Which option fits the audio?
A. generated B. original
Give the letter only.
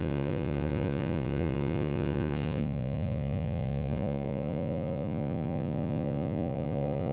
A